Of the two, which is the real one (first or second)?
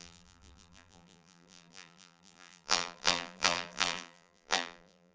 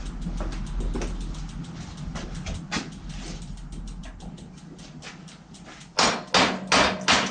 second